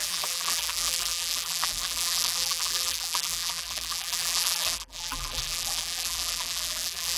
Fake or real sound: fake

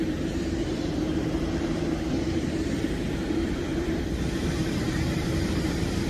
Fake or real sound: fake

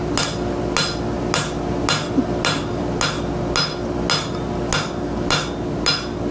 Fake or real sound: real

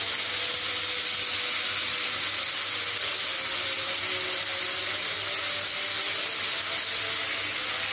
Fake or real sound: real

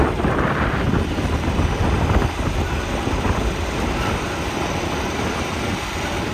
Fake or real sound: real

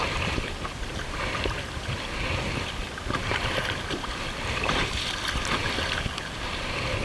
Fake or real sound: fake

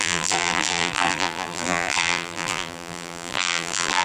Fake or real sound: fake